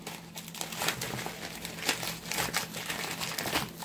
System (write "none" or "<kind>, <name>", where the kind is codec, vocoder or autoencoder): none